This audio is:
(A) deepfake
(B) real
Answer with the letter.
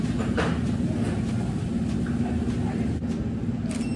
B